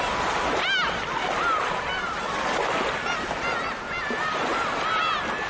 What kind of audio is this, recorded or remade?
recorded